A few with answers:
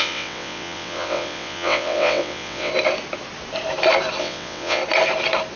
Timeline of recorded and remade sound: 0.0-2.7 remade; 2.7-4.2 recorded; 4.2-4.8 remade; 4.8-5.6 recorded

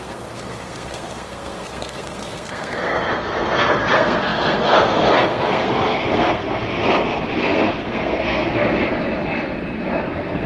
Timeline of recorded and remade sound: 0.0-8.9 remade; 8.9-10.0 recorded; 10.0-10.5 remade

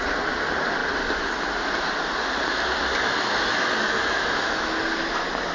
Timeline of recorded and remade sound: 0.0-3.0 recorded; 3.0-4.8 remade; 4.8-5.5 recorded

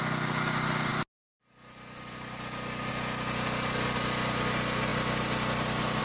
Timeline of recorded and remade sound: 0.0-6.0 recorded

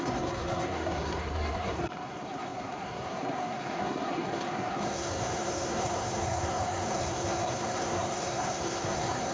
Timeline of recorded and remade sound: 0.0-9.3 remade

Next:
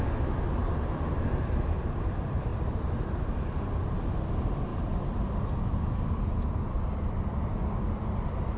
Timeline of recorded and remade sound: 0.0-7.5 recorded; 7.5-8.0 remade; 8.0-8.6 recorded

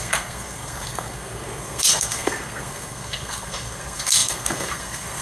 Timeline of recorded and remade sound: 0.0-5.2 remade

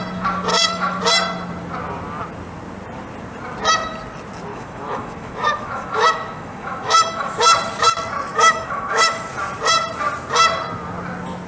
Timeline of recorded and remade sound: 0.0-0.5 recorded; 0.5-1.0 remade; 1.0-4.5 recorded; 4.5-7.4 remade; 7.4-8.3 recorded; 8.3-9.3 remade; 9.3-11.5 recorded